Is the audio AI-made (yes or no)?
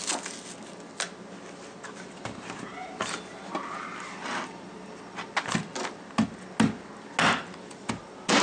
no